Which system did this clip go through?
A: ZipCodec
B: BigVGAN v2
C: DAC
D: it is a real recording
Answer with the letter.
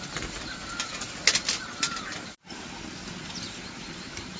D